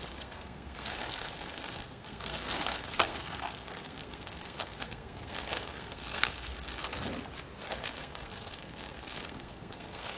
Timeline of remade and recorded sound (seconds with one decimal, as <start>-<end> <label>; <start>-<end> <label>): 0.0-6.8 remade; 6.8-7.7 recorded; 7.7-10.2 remade

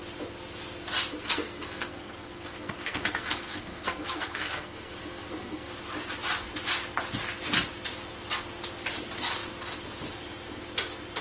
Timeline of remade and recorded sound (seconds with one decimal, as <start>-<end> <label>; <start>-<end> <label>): 0.0-1.1 recorded; 1.1-5.7 remade; 5.7-11.2 recorded

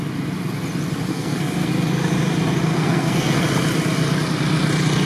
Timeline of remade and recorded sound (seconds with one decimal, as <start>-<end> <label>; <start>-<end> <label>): 0.0-1.1 recorded; 1.1-1.7 remade; 1.7-2.7 recorded; 2.7-3.4 remade; 3.4-5.1 recorded

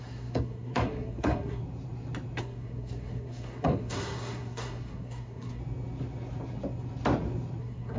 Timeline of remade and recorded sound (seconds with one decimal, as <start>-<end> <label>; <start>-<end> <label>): 0.0-1.6 remade; 1.6-2.4 recorded; 2.4-5.6 remade; 5.6-7.6 recorded; 7.6-8.0 remade

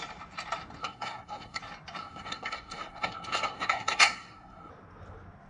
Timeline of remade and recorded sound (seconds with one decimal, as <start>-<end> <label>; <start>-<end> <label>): 0.0-0.8 recorded; 0.8-1.6 remade; 1.6-2.0 recorded; 2.0-4.7 remade; 4.7-5.5 recorded

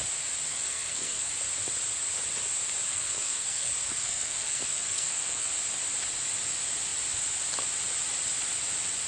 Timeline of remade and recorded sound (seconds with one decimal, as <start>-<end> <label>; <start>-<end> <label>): 0.0-0.5 recorded; 0.5-1.3 remade; 1.3-2.9 recorded; 2.9-5.5 remade; 5.5-9.1 recorded